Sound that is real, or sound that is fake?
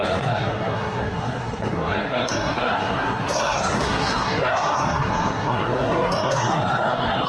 fake